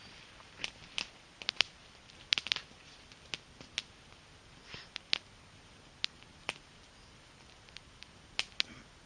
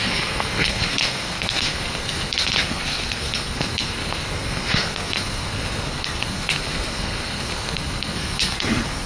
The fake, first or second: second